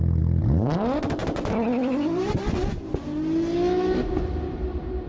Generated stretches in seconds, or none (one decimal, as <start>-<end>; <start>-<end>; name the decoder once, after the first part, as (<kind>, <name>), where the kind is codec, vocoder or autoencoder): none